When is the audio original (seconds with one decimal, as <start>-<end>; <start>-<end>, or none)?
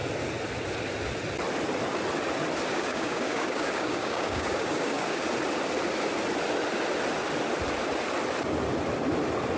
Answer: 0.0-2.7; 5.2-9.6